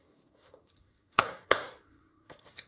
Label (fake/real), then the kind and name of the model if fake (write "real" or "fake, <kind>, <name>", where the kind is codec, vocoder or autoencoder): fake, codec, SNAC